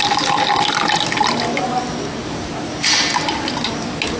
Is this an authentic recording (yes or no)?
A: yes